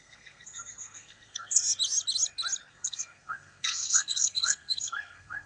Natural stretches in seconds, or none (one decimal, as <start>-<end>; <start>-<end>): 1.6-2.7